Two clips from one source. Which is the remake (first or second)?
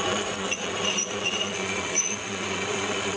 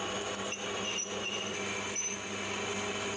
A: first